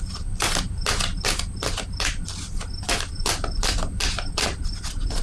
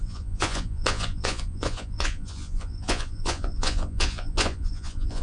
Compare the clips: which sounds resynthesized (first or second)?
second